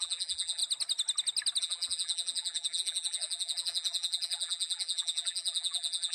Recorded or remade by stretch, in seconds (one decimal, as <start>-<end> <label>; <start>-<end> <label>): 0.0-0.6 remade; 0.6-1.6 recorded; 1.6-6.1 remade